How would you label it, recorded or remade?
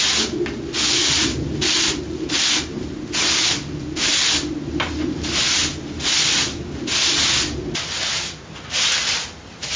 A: recorded